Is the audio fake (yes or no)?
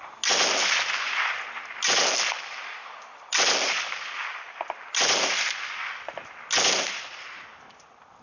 no